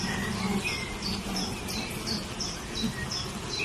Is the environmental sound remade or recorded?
recorded